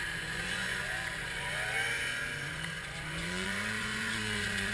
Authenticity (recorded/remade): remade